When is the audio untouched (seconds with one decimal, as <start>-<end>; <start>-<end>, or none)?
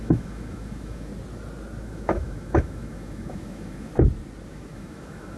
1.1-1.8; 3.9-4.5